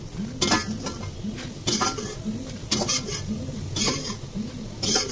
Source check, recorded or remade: recorded